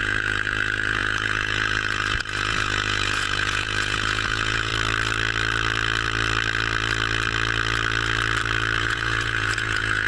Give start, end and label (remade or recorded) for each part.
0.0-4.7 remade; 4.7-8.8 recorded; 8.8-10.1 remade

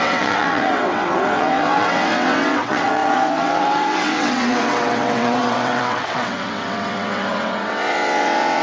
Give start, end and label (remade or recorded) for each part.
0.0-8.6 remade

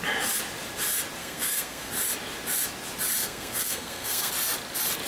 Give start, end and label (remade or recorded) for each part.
0.0-1.2 recorded; 1.2-1.9 remade; 1.9-3.2 recorded; 3.2-4.3 remade; 4.3-5.1 recorded

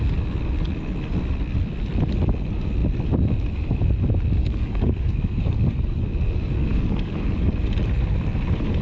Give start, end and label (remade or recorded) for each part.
0.0-4.4 recorded; 4.4-6.1 remade; 6.1-6.7 recorded; 6.7-7.6 remade; 7.6-8.8 recorded

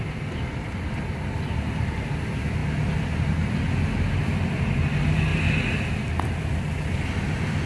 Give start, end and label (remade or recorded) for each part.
0.0-7.7 recorded